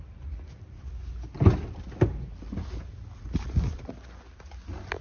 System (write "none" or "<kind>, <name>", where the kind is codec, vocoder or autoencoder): none